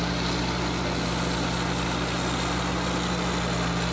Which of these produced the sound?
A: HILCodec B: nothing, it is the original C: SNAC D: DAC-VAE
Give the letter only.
B